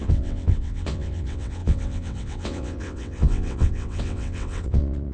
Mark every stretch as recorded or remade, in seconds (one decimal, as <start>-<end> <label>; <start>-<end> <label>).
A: 0.0-5.1 remade